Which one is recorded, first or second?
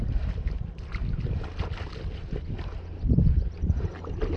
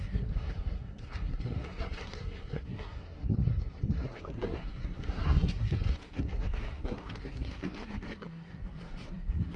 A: first